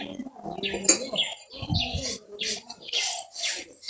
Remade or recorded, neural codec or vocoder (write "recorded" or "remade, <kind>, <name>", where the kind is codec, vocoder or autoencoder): recorded